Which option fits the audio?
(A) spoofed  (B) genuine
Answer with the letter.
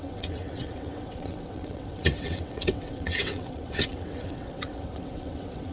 A